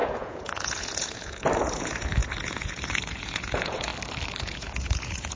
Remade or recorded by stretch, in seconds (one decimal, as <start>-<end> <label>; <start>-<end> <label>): 0.0-3.9 remade; 3.9-4.4 recorded; 4.4-5.4 remade

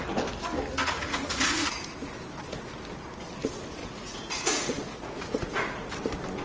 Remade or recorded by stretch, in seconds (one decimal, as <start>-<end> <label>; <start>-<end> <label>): 0.0-0.8 recorded; 0.8-1.9 remade; 1.9-3.8 recorded; 3.8-5.9 remade; 5.9-6.4 recorded

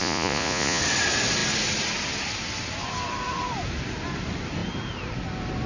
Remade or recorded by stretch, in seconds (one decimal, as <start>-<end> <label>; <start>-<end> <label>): 0.0-0.8 remade; 0.8-5.7 recorded

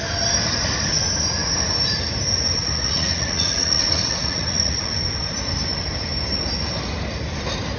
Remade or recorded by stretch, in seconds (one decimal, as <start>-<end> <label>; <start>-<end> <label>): 0.0-2.6 recorded; 2.6-4.9 remade; 4.9-7.8 recorded

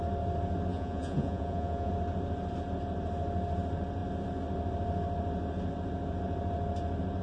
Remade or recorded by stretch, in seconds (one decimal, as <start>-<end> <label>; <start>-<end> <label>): 0.0-0.7 recorded; 0.7-1.9 remade; 1.9-7.2 recorded

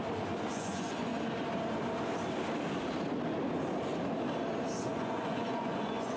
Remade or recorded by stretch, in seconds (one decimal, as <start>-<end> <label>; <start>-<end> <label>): 0.0-0.5 recorded; 0.5-1.1 remade; 1.1-4.8 recorded; 4.8-6.2 remade

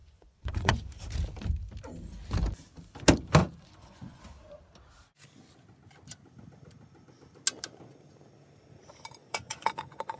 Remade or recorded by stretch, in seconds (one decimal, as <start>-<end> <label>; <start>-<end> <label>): 0.0-0.9 remade; 0.9-3.4 recorded; 3.4-4.2 remade; 4.2-9.2 recorded; 9.2-10.2 remade

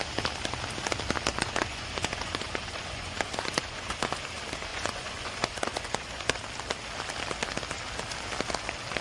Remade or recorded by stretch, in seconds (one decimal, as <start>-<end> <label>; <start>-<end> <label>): 0.0-1.3 recorded; 1.3-4.1 remade; 4.1-4.7 recorded; 4.7-6.4 remade; 6.4-9.0 recorded